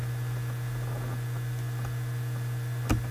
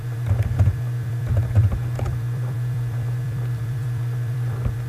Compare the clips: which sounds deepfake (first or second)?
second